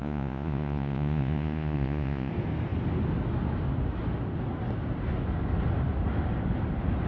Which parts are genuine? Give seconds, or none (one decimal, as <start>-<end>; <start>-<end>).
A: 2.3-7.1